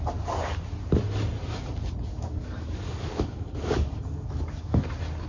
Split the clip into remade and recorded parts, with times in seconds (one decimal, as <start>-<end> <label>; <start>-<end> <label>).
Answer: 0.0-2.1 recorded; 2.1-4.8 remade; 4.8-5.3 recorded